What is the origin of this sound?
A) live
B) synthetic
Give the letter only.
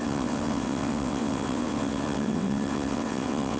B